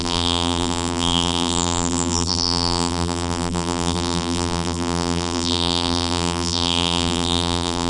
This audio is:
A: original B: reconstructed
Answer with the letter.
B